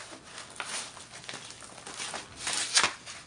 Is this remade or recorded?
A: recorded